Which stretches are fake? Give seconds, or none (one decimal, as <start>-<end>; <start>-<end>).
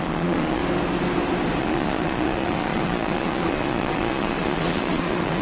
0.0-0.6; 1.6-5.4